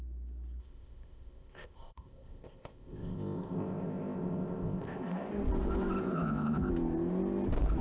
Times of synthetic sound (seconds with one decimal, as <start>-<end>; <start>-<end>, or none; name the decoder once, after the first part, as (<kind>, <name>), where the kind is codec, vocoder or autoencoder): 0.6-5.3 (codec, ZipCodec); 6.0-6.7